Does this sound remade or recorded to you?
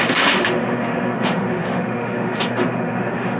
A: remade